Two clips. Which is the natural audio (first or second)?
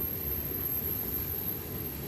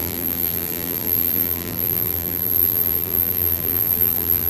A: first